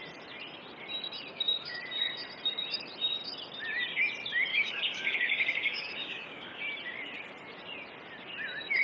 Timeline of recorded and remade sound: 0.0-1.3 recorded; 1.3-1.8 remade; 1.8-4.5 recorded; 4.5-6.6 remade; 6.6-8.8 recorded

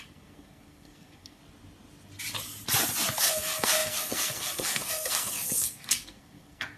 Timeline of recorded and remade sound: 0.0-1.4 remade; 1.4-3.2 recorded; 3.2-6.8 remade

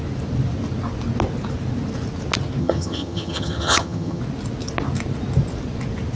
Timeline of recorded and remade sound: 0.0-2.6 recorded; 2.6-4.2 remade; 4.2-6.2 recorded

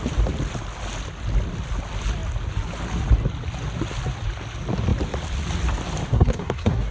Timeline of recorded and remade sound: 0.0-6.1 recorded; 6.1-6.9 remade